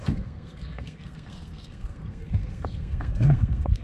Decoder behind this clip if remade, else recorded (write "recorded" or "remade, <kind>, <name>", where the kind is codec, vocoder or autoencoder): remade, codec, SNAC